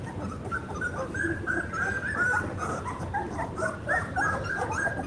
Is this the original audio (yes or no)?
yes